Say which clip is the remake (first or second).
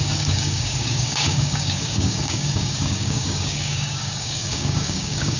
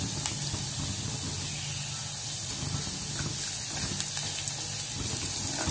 first